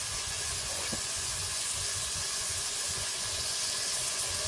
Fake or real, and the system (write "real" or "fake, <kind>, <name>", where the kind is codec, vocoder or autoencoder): fake, vocoder, Vocos